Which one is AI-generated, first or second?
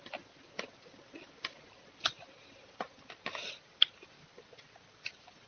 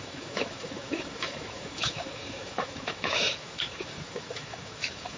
second